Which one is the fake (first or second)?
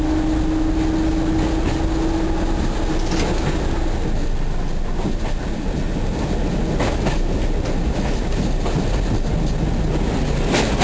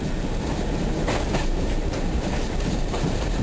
second